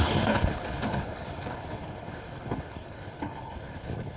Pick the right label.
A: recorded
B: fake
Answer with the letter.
B